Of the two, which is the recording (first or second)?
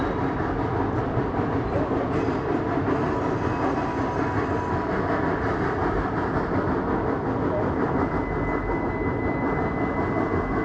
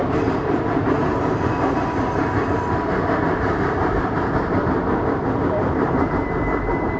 first